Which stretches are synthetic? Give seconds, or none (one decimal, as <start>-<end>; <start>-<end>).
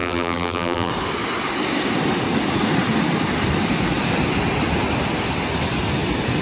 0.0-0.9